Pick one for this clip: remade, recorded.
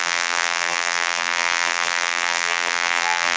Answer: remade